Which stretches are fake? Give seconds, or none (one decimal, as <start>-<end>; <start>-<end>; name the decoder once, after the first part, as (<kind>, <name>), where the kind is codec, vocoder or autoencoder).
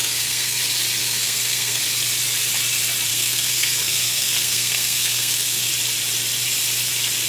0.0-0.6 (codec, SNAC); 1.0-1.8; 3.1-5.7